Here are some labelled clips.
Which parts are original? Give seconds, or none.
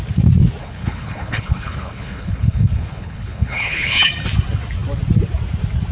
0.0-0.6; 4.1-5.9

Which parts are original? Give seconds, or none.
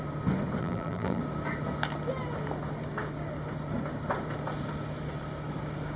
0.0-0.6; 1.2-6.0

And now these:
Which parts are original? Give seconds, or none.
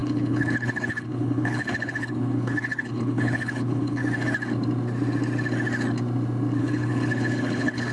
4.0-6.6